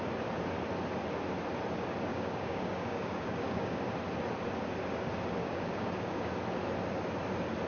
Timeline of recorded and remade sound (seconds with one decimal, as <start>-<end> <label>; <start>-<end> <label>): 0.0-2.1 recorded; 2.1-3.8 remade; 3.8-5.4 recorded; 5.4-6.3 remade; 6.3-7.7 recorded